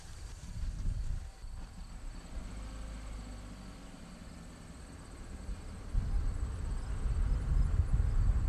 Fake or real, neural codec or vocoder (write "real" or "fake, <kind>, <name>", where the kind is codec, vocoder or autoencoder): real